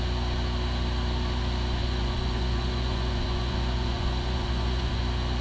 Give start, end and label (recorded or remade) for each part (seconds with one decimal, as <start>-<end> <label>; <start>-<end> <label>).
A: 0.0-1.8 recorded; 1.8-5.0 remade; 5.0-5.4 recorded